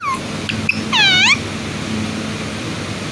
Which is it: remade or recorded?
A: recorded